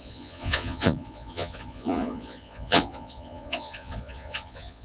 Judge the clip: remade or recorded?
remade